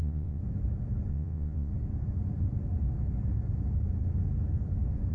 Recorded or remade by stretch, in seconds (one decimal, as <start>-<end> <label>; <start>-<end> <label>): 0.0-0.4 remade; 0.4-1.1 recorded; 1.1-1.7 remade; 1.7-5.1 recorded